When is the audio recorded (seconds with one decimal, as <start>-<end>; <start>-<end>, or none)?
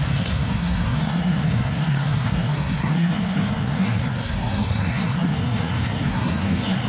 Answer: none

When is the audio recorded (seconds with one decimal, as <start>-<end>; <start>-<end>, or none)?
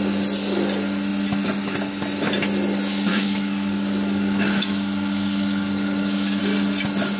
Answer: 0.0-3.1; 6.4-7.2